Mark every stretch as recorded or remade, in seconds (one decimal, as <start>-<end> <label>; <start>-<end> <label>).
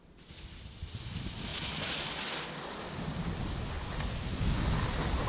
0.0-5.3 recorded